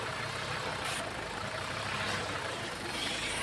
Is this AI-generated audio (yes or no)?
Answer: yes